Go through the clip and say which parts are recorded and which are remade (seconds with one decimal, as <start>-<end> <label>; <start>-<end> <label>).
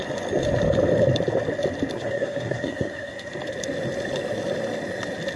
0.0-1.9 recorded; 1.9-3.3 remade; 3.3-5.4 recorded